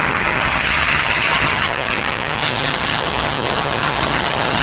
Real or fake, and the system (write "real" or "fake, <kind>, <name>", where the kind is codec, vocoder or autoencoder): fake, vocoder, HiFi-GAN